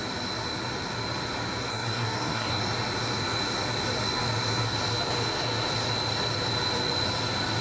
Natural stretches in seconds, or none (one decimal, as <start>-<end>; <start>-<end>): 0.0-1.7; 2.6-7.6